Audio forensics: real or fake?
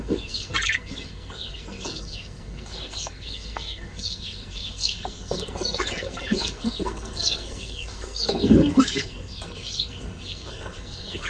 fake